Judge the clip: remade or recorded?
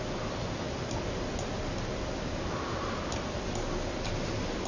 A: recorded